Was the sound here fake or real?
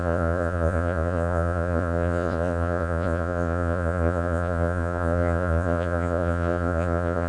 fake